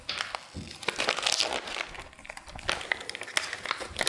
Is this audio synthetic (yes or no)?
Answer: no